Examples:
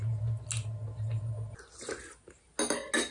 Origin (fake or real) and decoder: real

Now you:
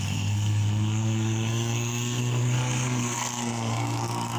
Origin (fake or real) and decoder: fake, codec, SNAC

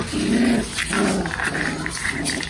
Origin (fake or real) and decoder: real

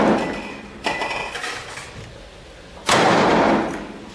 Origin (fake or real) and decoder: real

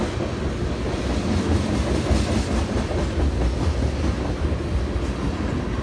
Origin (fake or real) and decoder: real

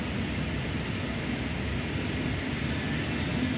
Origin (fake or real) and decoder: real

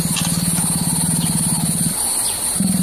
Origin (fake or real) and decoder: real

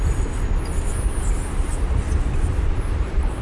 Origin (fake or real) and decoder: real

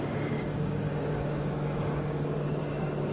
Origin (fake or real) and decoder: fake, codec, DAC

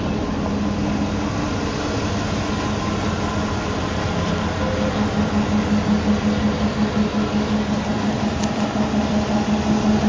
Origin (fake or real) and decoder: real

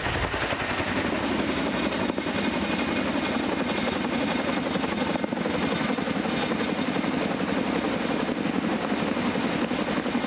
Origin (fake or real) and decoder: real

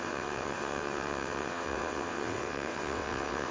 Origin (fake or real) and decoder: fake, vocoder, WaveNeXt